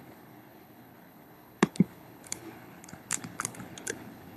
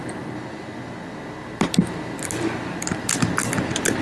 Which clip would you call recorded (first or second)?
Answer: second